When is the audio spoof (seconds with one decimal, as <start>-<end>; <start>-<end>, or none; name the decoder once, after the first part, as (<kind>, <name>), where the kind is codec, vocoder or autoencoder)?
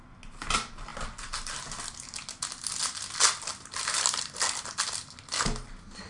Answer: none